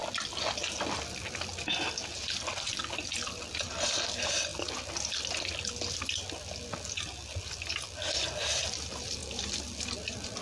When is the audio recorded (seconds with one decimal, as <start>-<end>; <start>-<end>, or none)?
1.4-4.5; 6.4-9.2